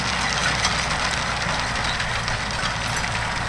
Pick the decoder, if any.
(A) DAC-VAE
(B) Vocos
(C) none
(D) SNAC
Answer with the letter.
C